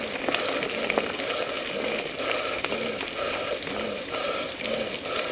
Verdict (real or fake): real